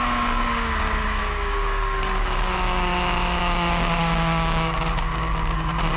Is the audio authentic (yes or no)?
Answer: no